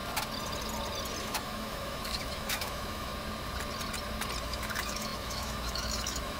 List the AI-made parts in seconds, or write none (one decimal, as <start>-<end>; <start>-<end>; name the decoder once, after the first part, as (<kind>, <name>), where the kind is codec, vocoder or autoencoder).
1.2-3.1 (autoencoder, DAC-VAE); 4.4-6.4